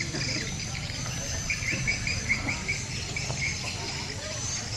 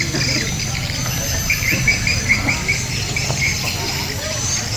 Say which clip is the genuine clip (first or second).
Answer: second